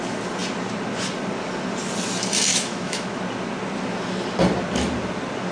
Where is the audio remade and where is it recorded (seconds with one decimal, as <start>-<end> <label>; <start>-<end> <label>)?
0.0-2.5 recorded; 2.5-3.2 remade; 3.2-5.5 recorded